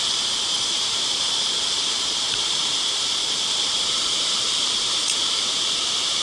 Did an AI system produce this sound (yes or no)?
yes